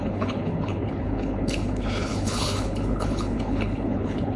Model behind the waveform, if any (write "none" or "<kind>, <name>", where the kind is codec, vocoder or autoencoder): codec, HILCodec